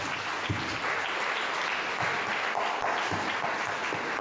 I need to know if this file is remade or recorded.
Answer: recorded